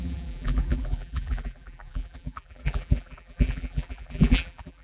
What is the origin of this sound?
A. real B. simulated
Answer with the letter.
B